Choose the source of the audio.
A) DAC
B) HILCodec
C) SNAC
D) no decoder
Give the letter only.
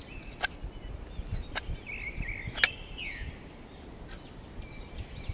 D